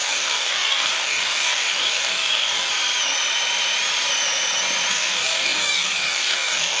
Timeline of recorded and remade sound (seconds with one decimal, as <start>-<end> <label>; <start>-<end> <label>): 0.0-2.7 remade; 2.7-4.9 recorded; 4.9-6.8 remade

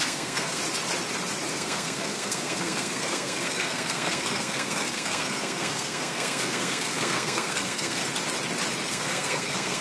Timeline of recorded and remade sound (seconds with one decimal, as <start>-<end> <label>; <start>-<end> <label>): 0.0-0.6 remade; 0.6-1.5 recorded; 1.5-8.0 remade; 8.0-8.9 recorded; 8.9-9.8 remade

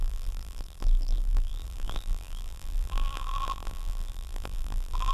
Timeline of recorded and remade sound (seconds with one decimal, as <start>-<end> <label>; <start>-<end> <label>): 0.0-5.1 remade

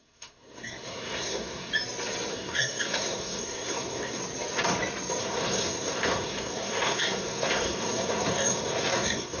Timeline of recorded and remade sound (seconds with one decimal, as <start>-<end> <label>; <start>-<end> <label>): 0.0-1.7 remade; 1.7-2.3 recorded; 2.3-4.2 remade; 4.2-5.2 recorded; 5.2-9.4 remade

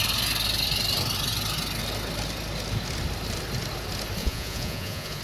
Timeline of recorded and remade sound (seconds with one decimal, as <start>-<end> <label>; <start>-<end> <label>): 0.0-4.2 recorded; 4.2-5.2 remade

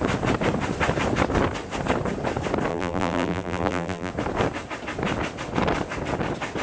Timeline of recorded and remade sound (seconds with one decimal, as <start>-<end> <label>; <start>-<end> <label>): 0.0-2.7 recorded; 2.7-4.1 remade; 4.1-6.6 recorded

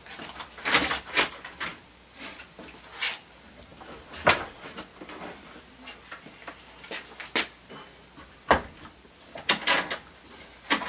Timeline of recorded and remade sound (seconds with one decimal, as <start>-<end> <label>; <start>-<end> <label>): 0.0-10.9 recorded

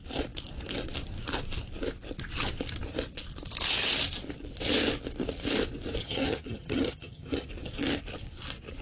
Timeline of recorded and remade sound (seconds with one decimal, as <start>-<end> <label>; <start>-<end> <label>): 0.0-6.0 recorded; 6.0-7.5 remade; 7.5-8.8 recorded